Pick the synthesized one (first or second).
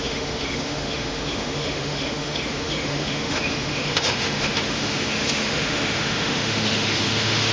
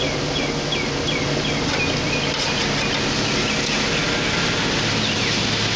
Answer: first